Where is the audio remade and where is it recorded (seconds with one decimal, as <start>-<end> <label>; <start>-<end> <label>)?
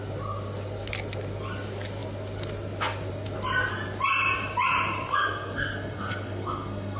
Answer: 0.0-5.2 recorded; 5.2-7.0 remade